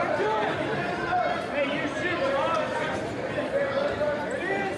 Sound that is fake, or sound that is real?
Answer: fake